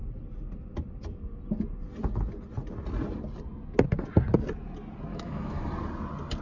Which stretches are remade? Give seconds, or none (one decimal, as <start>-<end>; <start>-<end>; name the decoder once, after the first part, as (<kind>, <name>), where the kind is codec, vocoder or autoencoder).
5.1-5.6 (autoencoder, DAC-VAE)